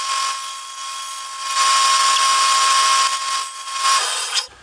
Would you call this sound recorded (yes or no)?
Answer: yes